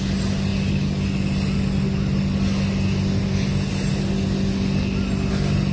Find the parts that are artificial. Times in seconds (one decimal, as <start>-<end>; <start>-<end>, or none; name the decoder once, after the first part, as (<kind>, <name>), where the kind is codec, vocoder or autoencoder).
none